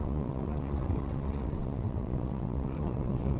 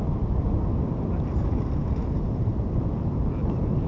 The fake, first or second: first